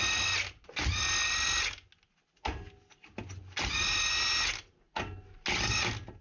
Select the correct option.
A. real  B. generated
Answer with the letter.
A